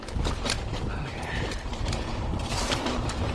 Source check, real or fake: fake